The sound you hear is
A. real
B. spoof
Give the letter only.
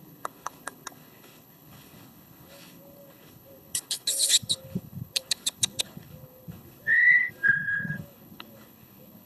B